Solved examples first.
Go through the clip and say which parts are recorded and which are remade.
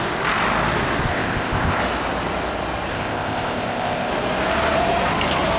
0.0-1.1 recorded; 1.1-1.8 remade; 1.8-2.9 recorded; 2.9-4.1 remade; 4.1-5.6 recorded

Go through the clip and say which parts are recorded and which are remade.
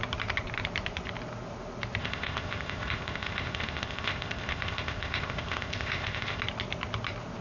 0.0-2.0 recorded; 2.0-6.4 remade; 6.4-7.4 recorded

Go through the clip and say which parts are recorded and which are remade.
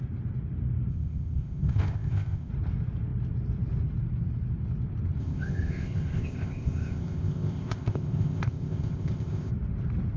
0.0-0.9 recorded; 0.9-2.5 remade; 2.5-5.2 recorded; 5.2-9.5 remade; 9.5-10.2 recorded